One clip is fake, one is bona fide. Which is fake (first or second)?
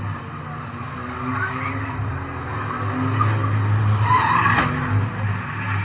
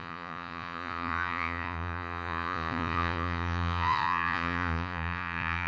second